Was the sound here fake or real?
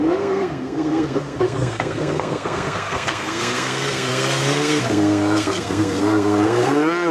fake